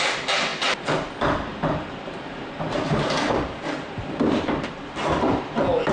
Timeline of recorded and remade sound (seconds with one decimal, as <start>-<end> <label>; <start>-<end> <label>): 0.0-1.5 recorded; 1.5-5.0 remade; 5.0-5.9 recorded